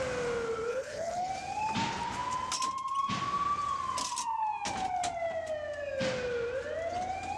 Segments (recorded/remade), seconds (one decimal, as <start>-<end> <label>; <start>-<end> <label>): 0.0-0.7 recorded; 0.7-1.3 remade; 1.3-7.4 recorded